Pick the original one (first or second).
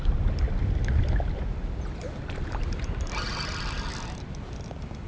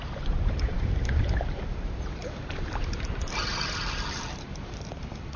first